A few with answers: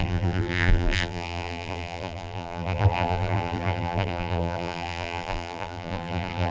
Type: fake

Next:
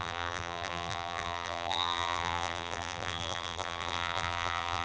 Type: fake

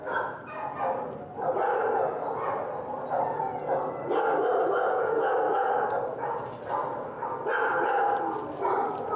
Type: real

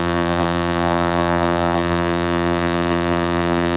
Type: fake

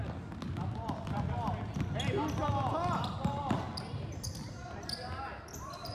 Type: real